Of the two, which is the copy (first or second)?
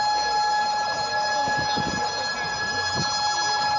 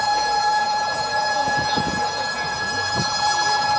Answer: second